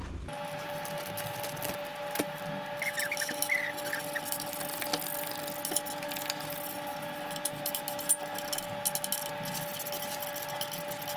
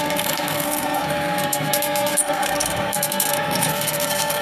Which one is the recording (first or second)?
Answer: first